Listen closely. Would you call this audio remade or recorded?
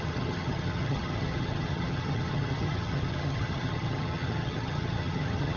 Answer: remade